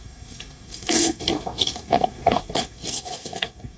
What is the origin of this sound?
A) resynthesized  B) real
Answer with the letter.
A